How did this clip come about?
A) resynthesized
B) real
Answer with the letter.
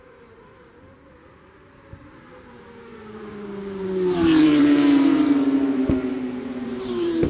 A